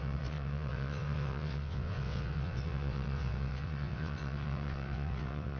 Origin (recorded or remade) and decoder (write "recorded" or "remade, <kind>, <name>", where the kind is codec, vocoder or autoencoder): remade, vocoder, WaveNeXt